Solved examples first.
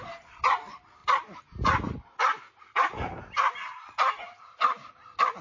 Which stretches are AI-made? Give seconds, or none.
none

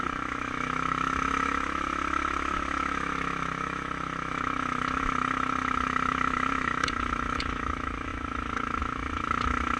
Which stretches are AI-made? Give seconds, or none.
0.0-9.8 (autoencoder, DAC-VAE)

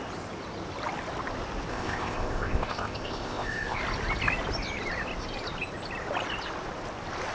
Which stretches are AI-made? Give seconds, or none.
1.7-3.8 (codec, ZipCodec)

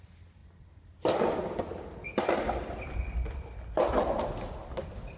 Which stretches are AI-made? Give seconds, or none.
none

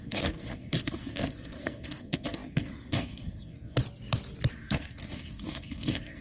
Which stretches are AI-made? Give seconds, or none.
0.0-3.8 (codec, SNAC); 4.5-6.2

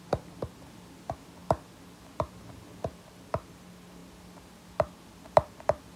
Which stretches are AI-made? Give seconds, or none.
none

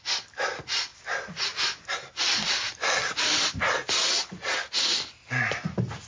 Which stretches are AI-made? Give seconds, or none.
none

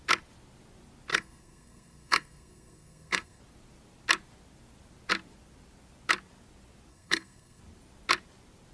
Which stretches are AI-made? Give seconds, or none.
1.1-3.4 (codec, SNAC); 6.9-7.6